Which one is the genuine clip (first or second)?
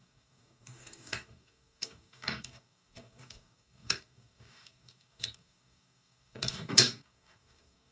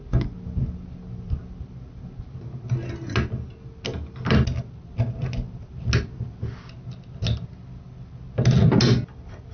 second